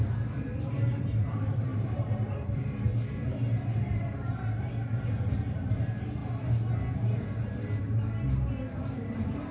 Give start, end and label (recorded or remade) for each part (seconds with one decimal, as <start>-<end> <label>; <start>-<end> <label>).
0.0-6.2 remade; 6.2-8.7 recorded; 8.7-9.5 remade